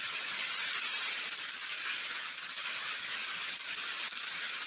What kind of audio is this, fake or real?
real